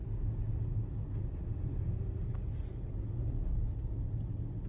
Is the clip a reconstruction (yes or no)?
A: no